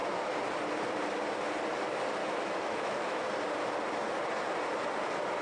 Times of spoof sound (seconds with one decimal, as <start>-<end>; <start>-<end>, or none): 2.2-3.2